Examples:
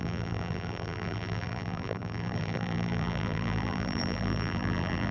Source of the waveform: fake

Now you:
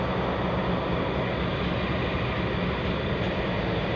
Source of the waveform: real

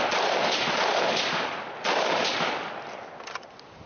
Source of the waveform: real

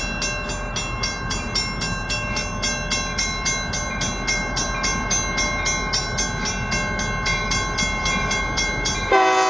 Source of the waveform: real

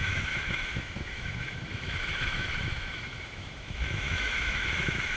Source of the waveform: fake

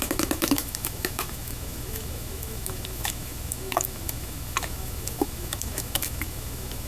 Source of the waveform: fake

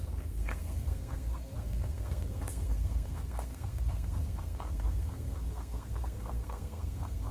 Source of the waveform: fake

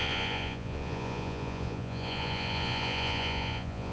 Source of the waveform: fake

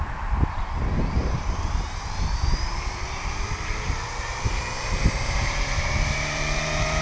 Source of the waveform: fake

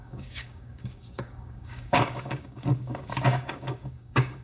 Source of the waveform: fake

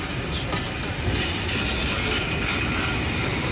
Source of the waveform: real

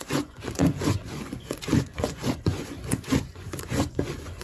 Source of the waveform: fake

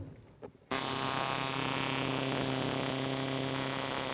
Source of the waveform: real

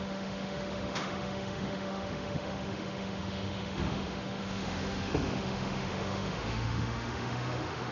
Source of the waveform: fake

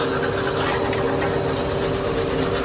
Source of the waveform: real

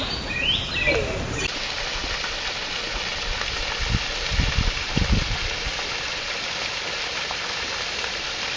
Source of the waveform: real